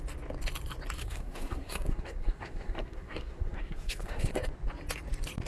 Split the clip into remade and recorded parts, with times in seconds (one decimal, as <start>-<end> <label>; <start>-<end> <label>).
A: 0.0-1.0 recorded; 1.0-4.3 remade; 4.3-5.5 recorded